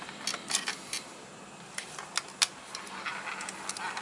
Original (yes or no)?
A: yes